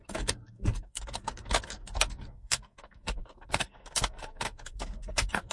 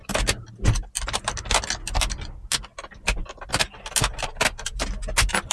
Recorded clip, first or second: second